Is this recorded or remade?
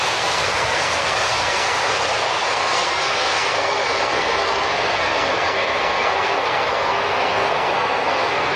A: remade